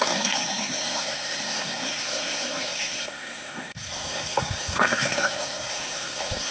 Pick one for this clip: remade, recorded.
remade